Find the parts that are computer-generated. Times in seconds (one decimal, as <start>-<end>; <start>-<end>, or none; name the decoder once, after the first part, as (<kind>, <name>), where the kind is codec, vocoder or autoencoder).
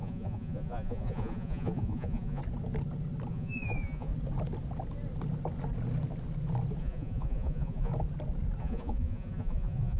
0.0-2.4 (vocoder, Vocos); 3.3-4.1; 6.8-7.9; 8.6-10.0